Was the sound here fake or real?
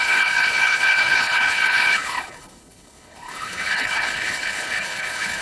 fake